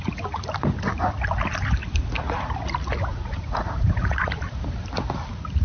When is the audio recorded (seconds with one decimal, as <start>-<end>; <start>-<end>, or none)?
0.0-3.1; 4.3-5.6